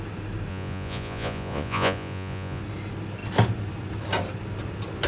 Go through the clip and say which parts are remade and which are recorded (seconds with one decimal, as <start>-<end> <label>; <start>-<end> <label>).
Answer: 0.0-0.5 recorded; 0.5-2.6 remade; 2.6-5.1 recorded